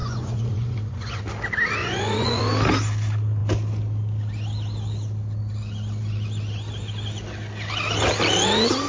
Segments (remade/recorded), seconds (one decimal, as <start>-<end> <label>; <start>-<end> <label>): 0.0-1.2 remade; 1.2-1.8 recorded; 1.8-2.4 remade; 2.4-8.9 recorded